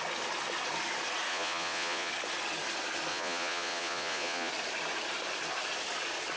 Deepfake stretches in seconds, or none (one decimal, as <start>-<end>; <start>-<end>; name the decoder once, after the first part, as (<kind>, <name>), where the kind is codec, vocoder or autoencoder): 1.3-2.1 (vocoder, Vocos); 3.1-4.5